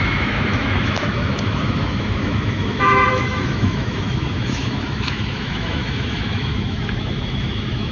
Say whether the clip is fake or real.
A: fake